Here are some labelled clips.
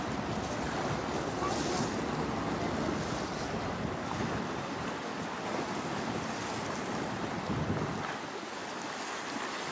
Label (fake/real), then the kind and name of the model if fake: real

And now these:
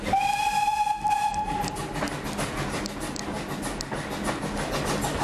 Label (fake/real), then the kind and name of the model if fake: real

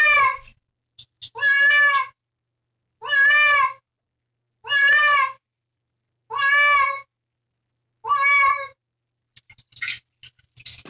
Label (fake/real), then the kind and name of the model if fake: real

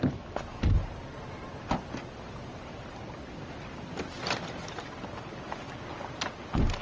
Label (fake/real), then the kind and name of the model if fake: real